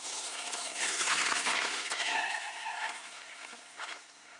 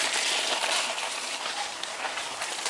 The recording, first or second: second